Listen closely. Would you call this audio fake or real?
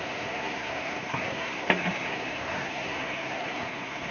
fake